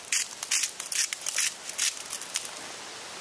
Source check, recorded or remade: recorded